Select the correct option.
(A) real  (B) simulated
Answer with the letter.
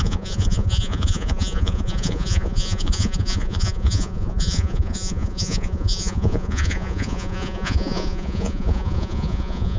B